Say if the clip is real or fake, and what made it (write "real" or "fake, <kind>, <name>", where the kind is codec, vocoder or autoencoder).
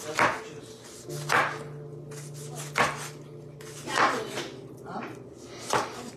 real